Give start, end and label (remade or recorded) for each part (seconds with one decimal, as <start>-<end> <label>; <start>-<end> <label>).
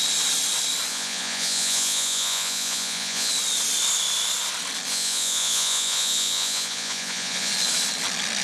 0.0-0.9 recorded; 0.9-3.3 remade; 3.3-4.9 recorded; 4.9-7.5 remade; 7.5-8.4 recorded